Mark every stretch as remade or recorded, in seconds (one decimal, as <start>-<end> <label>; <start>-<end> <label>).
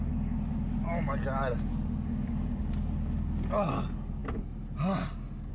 0.0-5.5 recorded